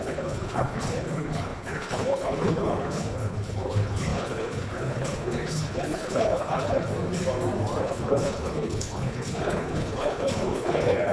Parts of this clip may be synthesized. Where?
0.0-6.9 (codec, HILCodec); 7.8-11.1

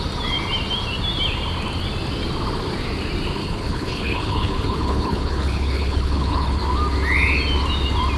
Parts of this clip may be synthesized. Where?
3.4-6.6 (codec, HILCodec)